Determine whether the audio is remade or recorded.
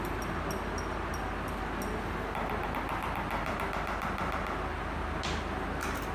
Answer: recorded